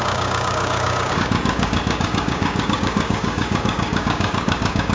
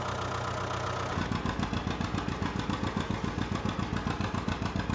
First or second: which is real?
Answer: second